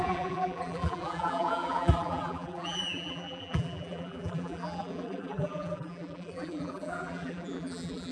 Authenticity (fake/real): fake